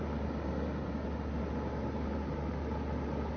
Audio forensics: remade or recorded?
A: recorded